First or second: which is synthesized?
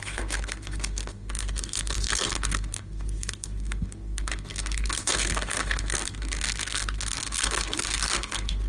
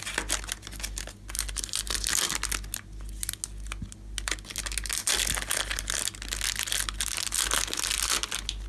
first